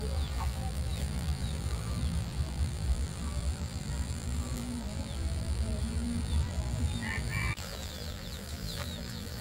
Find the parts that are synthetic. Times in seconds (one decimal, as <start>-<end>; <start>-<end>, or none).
0.0-9.4